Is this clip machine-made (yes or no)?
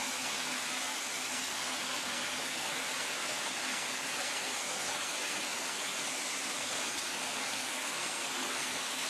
yes